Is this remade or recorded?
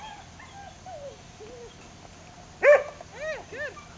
recorded